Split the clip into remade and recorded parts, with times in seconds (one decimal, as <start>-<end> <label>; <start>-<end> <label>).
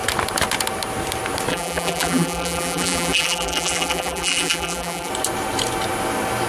0.0-1.5 recorded; 1.5-5.1 remade; 5.1-6.5 recorded